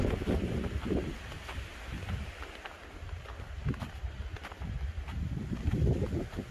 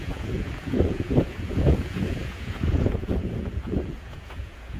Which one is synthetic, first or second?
second